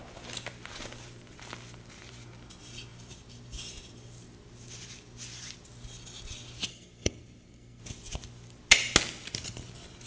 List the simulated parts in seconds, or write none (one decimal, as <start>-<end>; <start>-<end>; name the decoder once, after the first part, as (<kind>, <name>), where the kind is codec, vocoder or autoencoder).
6.7-7.8 (codec, SNAC)

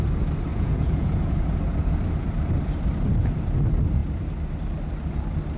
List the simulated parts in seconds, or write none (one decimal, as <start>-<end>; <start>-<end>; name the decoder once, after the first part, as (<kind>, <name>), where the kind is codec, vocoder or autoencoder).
0.5-1.6 (vocoder, Vocos)

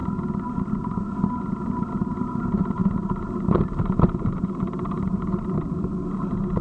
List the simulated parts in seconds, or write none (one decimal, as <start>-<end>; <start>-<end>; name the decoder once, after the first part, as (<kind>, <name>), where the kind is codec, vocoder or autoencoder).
2.8-5.5 (vocoder, BigVGAN v2)